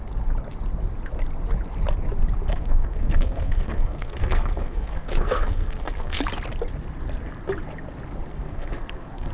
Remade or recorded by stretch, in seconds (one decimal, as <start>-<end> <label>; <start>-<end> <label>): 0.0-2.5 recorded; 2.5-6.2 remade; 6.2-8.3 recorded; 8.3-9.3 remade